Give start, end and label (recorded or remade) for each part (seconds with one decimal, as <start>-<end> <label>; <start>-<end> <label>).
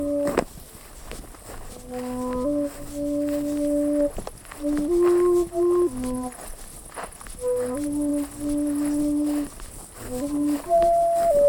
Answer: 0.0-11.5 recorded